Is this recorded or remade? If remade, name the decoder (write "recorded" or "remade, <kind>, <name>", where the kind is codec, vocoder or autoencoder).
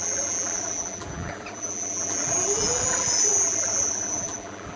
remade, vocoder, BigVGAN v2